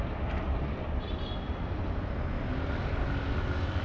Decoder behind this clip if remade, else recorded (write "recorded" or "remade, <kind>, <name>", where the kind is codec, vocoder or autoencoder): recorded